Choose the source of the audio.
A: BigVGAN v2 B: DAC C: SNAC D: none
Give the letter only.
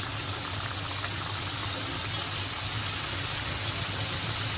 D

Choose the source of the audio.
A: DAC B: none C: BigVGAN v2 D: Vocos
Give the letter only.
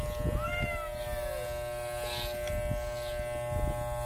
B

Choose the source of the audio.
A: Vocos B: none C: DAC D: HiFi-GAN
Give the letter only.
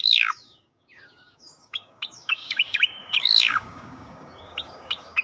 C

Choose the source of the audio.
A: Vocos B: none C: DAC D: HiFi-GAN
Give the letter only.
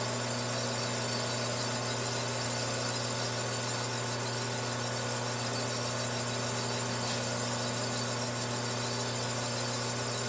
B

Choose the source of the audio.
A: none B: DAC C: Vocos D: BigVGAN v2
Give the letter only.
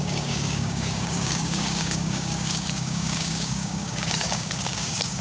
B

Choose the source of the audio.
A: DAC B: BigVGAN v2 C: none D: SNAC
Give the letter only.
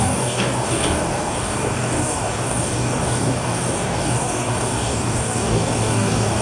A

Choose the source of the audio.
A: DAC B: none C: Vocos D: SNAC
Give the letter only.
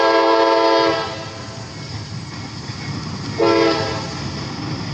B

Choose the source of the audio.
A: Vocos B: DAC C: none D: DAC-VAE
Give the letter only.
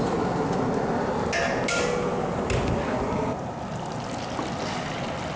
C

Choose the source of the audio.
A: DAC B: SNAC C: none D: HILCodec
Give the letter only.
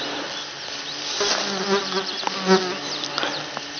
C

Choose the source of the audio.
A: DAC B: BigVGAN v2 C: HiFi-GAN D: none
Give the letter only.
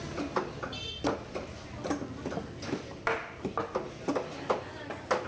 D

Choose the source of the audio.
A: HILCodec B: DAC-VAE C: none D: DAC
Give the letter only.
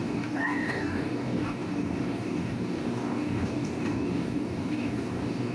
D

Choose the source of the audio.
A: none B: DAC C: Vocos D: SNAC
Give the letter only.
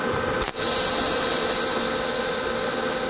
A